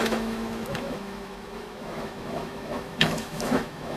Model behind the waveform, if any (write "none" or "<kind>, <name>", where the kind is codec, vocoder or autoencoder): autoencoder, DAC-VAE